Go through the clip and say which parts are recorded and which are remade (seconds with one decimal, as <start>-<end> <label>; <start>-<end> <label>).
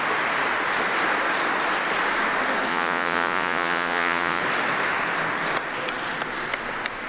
0.0-2.7 recorded; 2.7-4.4 remade; 4.4-7.1 recorded